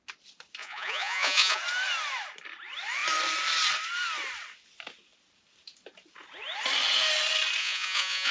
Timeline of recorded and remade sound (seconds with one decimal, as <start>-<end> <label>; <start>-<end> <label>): 0.0-0.6 recorded; 0.6-1.6 remade; 1.6-7.6 recorded; 7.6-8.3 remade